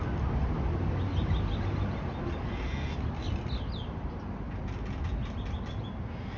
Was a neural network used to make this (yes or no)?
no